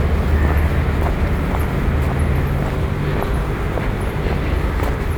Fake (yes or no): no